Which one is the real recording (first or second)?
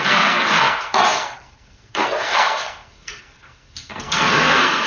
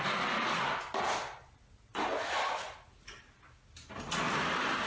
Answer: second